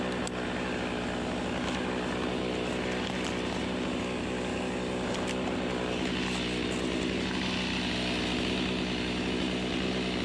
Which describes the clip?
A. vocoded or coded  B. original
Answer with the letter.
B